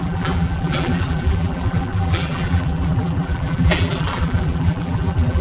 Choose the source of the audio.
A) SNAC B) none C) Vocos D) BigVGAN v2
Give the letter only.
D